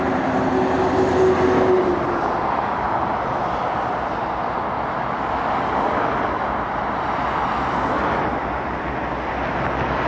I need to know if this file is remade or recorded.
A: recorded